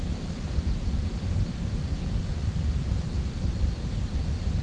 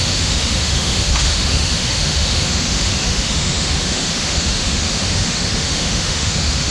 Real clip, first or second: first